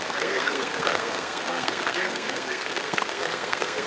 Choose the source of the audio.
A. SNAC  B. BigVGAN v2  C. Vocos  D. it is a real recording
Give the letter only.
A